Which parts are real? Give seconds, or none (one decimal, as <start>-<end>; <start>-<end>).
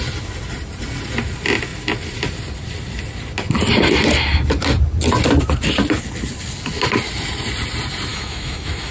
0.0-8.1